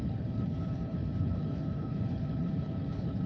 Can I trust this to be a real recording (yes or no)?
no